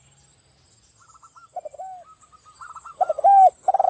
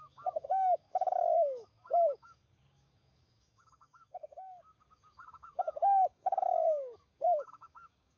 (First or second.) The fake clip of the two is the second